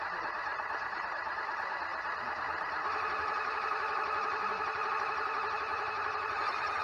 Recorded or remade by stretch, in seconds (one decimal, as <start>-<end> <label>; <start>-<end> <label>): 0.0-0.5 recorded; 0.5-1.4 remade; 1.4-5.7 recorded; 5.7-6.8 remade